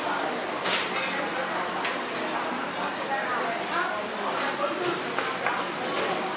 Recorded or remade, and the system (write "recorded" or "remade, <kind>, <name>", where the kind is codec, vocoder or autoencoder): recorded